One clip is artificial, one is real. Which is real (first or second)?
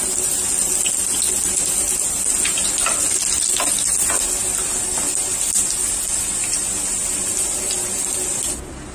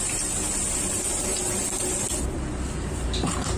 first